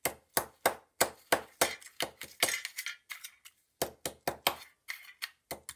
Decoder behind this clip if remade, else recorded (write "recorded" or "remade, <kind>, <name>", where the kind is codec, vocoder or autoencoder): recorded